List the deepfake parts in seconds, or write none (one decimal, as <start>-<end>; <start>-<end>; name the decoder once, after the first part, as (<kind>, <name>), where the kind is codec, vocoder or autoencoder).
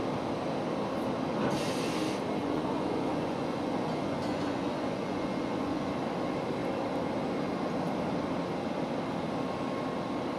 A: 2.4-5.9 (vocoder, Vocos)